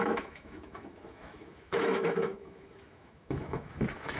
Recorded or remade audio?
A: remade